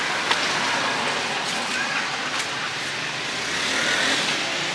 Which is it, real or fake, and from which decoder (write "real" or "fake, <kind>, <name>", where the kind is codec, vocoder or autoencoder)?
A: real